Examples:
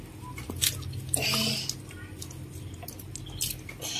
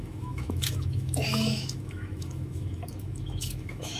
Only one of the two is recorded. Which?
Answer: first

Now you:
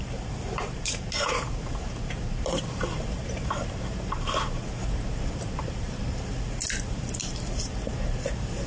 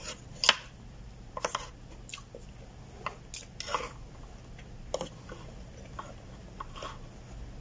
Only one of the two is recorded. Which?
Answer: second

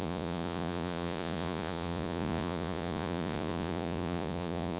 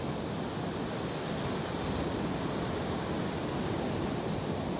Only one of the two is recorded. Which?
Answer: second